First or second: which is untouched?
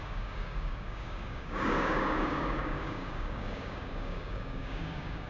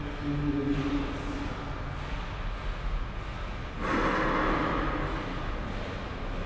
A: second